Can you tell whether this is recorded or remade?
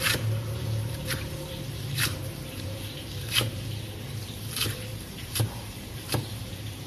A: remade